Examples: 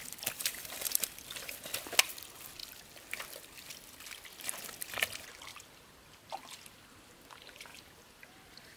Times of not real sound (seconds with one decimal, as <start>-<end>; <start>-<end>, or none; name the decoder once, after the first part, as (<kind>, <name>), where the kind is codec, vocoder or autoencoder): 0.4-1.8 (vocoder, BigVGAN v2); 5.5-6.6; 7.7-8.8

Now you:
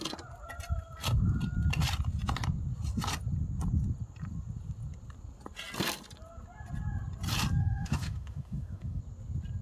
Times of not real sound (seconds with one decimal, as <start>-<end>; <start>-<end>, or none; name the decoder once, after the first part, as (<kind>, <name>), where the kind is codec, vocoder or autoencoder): 7.6-9.0 (autoencoder, DAC-VAE)

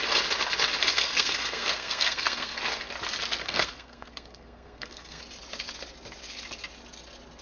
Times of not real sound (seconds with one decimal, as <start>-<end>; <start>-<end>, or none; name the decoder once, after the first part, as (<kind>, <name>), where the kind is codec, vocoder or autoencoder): 0.9-2.6 (codec, SNAC); 3.4-5.2

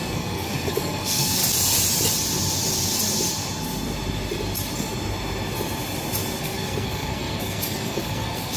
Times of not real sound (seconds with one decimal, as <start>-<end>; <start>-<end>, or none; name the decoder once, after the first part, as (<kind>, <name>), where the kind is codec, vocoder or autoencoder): 0.0-1.4 (codec, SNAC); 6.4-8.6

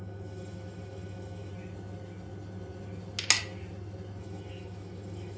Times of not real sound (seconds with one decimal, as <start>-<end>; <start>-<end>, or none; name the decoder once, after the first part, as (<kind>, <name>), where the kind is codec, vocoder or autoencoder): 0.0-1.5 (autoencoder, DAC-VAE); 4.2-5.4

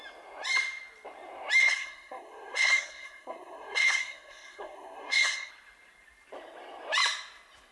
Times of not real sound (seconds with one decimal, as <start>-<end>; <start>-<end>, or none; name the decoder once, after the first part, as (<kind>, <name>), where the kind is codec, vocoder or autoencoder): 1.6-5.5 (codec, SNAC)

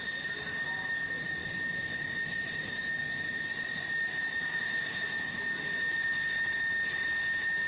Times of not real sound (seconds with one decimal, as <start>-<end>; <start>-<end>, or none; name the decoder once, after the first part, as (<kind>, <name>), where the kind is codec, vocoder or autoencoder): 4.5-5.3 (vocoder, Vocos)

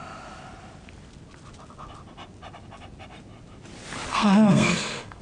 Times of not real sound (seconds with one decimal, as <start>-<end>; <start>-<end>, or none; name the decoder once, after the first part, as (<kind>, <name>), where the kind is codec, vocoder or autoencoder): 4.1-5.2 (codec, SNAC)